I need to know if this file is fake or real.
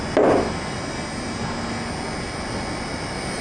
real